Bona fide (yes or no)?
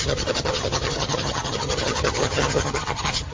no